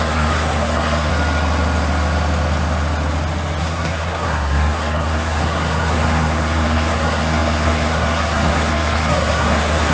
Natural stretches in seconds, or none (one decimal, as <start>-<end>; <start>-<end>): 1.1-3.6